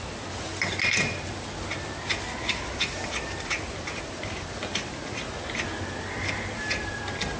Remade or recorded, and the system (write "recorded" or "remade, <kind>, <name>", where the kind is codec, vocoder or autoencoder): recorded